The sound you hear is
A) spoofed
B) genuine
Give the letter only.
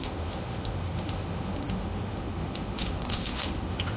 A